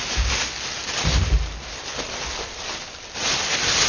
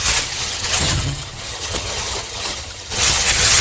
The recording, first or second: first